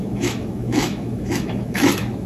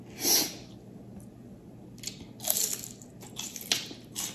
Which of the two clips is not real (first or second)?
first